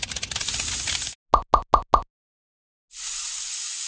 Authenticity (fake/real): real